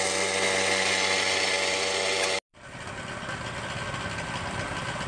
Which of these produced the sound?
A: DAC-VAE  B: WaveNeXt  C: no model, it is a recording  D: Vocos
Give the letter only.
C